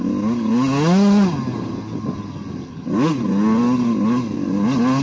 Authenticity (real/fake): real